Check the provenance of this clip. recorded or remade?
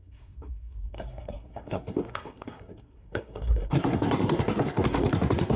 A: remade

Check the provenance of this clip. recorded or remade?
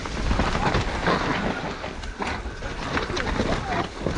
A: recorded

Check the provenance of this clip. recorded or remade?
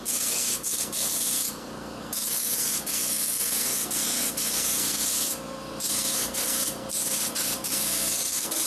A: remade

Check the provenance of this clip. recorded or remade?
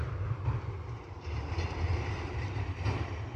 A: recorded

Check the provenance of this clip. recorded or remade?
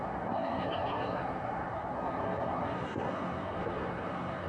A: remade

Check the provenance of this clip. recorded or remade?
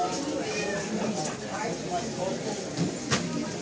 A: recorded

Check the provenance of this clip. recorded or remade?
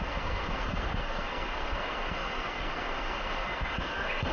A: remade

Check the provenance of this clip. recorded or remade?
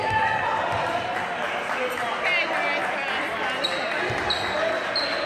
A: recorded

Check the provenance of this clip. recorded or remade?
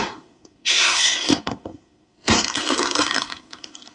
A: remade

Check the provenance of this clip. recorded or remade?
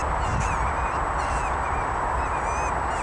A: recorded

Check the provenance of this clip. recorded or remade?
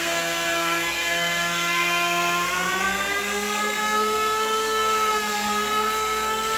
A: remade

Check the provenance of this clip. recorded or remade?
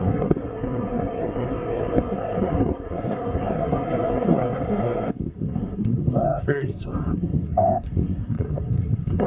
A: remade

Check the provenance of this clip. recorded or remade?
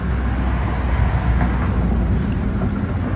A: recorded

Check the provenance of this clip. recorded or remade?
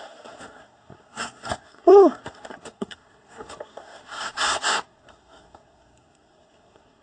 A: remade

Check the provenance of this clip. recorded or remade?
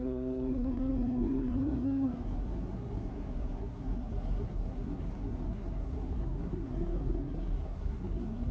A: remade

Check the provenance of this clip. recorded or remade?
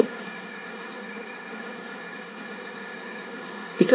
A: remade